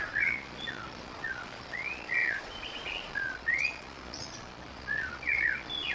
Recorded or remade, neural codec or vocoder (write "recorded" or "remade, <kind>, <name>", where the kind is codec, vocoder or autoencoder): remade, vocoder, Vocos